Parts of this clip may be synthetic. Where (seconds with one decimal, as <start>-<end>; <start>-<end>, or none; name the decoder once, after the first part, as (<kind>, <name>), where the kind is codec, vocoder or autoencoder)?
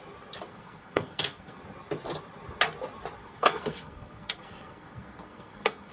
0.5-1.6 (codec, SNAC); 3.2-5.9